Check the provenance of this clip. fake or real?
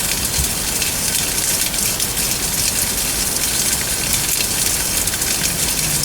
real